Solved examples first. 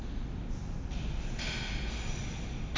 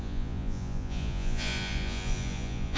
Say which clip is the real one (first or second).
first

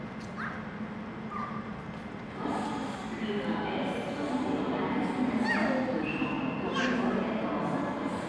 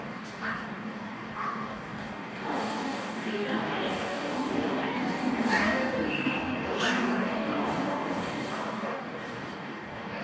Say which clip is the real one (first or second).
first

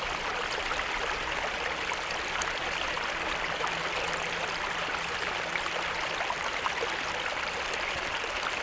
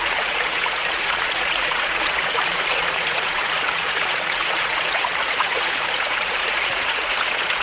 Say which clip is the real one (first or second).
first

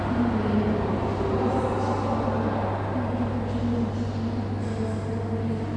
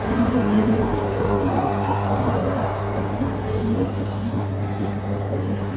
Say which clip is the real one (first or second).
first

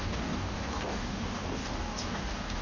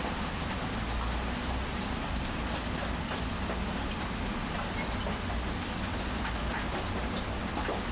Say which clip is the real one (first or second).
second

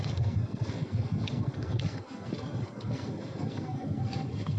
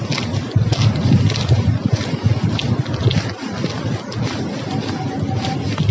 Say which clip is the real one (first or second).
second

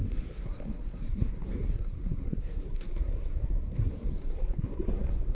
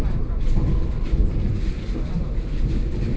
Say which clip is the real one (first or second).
second